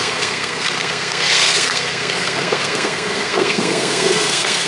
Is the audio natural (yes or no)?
no